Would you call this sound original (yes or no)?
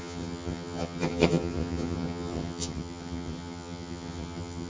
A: no